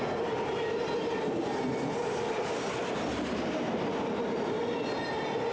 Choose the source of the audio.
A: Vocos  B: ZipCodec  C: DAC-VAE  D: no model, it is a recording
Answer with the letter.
D